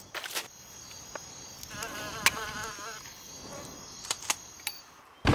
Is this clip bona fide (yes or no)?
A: yes